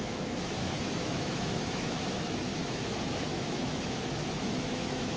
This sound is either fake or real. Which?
fake